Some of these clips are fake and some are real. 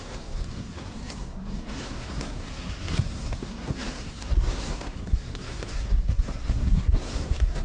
fake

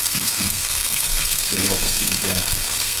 fake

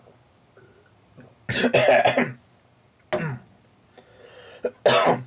real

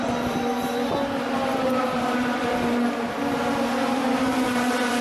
real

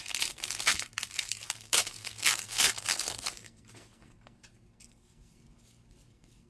fake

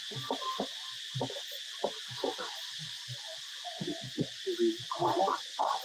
real